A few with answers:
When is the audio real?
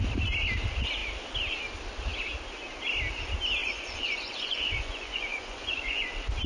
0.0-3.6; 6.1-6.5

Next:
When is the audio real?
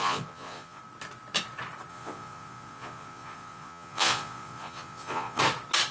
0.8-1.9; 5.4-5.9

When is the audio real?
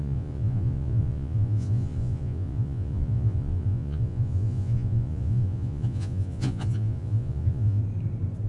7.8-8.5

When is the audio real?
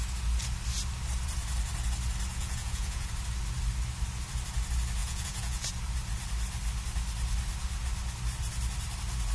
0.0-2.3; 3.1-5.0; 5.7-9.3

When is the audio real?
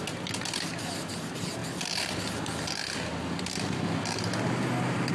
0.0-5.1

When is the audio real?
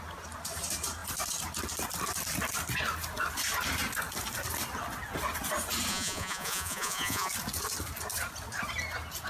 0.0-5.9; 7.3-9.3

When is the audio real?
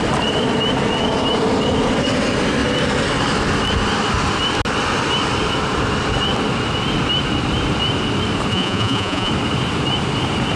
0.0-8.5; 9.3-10.6